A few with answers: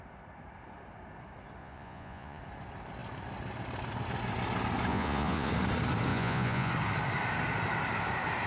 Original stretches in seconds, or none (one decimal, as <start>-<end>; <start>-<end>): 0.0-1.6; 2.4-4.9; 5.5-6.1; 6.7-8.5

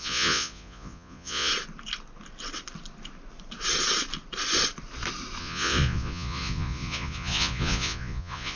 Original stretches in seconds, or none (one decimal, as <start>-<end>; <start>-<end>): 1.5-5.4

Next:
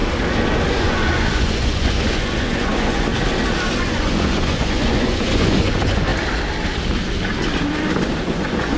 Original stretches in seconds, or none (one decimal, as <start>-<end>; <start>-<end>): 0.0-0.7; 3.1-3.8; 6.1-8.3